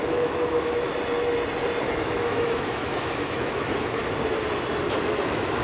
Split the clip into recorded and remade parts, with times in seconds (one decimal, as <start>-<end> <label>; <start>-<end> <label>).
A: 0.0-0.9 remade; 0.9-1.8 recorded; 1.8-4.0 remade; 4.0-5.0 recorded; 5.0-5.6 remade